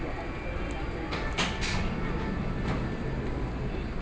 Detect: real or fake real